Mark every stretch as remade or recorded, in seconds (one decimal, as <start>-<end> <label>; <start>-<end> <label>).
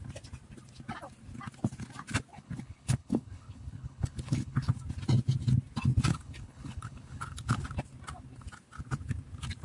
0.0-2.3 recorded; 2.3-4.7 remade; 4.7-6.1 recorded; 6.1-7.6 remade; 7.6-9.6 recorded